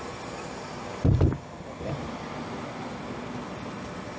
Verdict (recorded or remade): recorded